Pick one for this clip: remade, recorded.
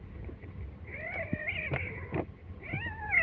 recorded